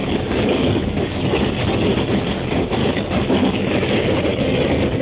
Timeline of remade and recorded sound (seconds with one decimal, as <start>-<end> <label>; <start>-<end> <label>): 0.0-1.5 remade; 1.5-2.8 recorded; 2.8-3.9 remade; 3.9-4.3 recorded; 4.3-5.0 remade